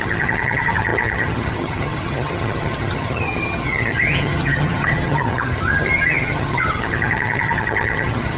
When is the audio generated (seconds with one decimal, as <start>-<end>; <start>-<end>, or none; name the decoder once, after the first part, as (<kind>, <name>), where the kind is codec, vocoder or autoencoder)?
0.0-8.4 (vocoder, HiFi-GAN)